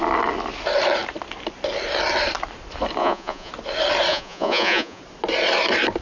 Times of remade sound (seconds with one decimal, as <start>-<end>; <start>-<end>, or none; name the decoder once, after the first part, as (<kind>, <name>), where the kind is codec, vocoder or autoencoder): 3.0-3.5 (vocoder, Vocos); 4.1-5.0